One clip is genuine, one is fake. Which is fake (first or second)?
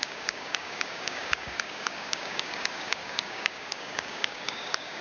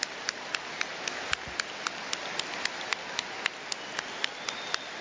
first